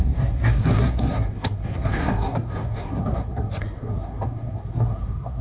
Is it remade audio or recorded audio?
remade